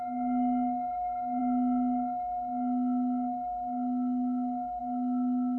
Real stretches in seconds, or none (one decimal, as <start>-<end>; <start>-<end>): none